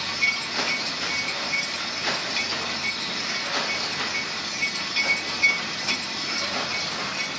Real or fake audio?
real